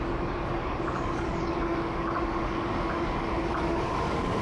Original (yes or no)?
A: no